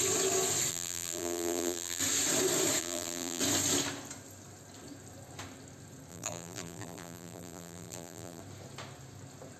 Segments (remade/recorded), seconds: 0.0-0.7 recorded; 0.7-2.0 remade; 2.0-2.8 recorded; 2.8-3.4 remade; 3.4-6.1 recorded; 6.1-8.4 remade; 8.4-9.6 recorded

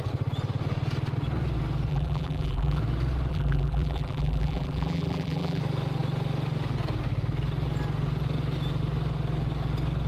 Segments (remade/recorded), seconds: 0.0-1.9 recorded; 1.9-2.8 remade; 2.8-3.3 recorded; 3.3-5.6 remade; 5.6-10.1 recorded

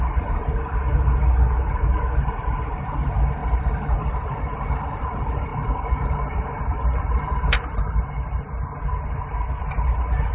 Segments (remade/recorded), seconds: 0.0-3.4 recorded; 3.4-5.0 remade; 5.0-5.5 recorded; 5.5-8.4 remade; 8.4-10.3 recorded

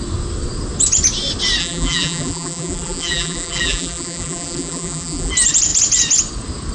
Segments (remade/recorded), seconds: 0.0-1.6 recorded; 1.6-5.3 remade; 5.3-6.7 recorded